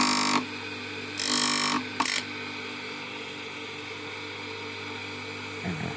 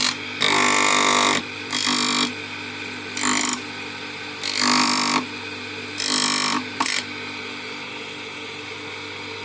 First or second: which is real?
first